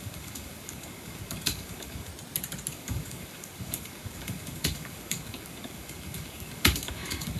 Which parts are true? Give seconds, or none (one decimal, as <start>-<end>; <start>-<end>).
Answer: 2.1-2.7